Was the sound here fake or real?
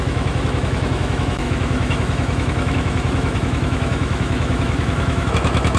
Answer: fake